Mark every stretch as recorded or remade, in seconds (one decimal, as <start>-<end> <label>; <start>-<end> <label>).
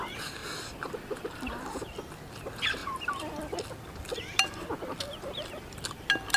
0.0-6.4 recorded